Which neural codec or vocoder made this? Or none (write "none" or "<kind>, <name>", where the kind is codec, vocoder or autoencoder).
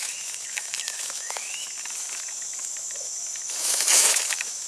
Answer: autoencoder, DAC-VAE